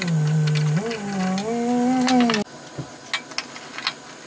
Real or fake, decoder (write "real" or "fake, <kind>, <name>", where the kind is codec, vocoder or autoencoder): real